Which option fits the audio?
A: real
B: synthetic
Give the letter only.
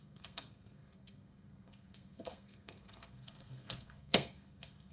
B